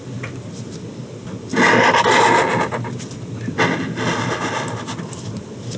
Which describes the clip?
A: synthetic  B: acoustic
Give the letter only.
B